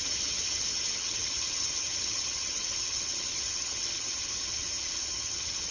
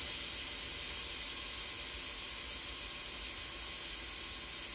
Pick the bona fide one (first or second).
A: second